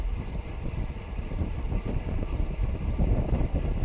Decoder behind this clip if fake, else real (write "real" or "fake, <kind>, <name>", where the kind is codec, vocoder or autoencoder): fake, vocoder, BigVGAN v2